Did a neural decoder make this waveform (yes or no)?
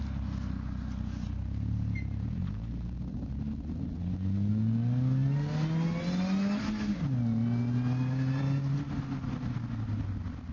no